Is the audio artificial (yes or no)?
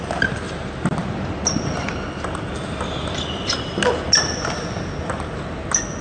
no